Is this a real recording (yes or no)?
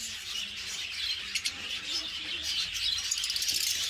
yes